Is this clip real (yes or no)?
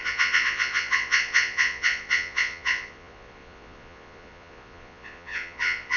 no